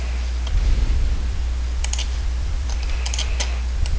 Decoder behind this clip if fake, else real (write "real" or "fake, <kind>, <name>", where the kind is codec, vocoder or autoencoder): fake, vocoder, BigVGAN v2